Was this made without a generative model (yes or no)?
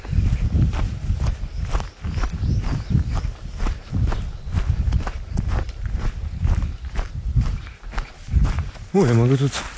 yes